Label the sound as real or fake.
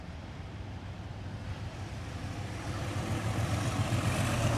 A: fake